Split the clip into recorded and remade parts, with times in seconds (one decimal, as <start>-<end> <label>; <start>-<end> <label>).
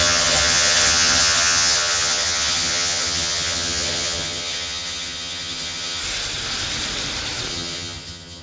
0.0-6.0 remade; 6.0-7.5 recorded; 7.5-8.4 remade